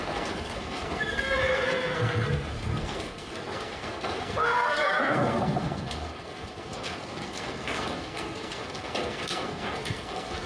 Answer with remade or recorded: remade